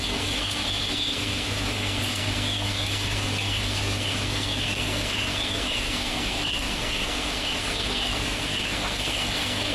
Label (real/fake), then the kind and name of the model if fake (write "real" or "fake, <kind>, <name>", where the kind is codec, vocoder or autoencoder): fake, codec, SNAC